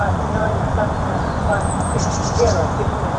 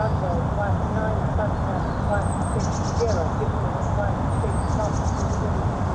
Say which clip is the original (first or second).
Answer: second